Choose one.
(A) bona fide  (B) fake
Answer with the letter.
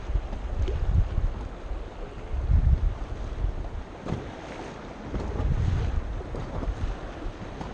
A